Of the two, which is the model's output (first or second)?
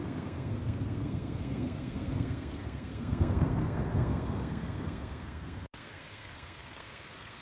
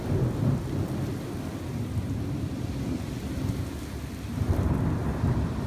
first